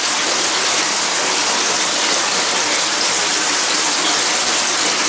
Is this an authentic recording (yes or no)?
yes